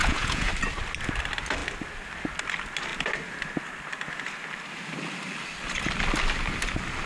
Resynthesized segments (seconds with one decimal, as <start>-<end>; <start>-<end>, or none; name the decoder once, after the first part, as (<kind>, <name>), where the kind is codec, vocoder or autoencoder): 0.0-0.5 (vocoder, Vocos)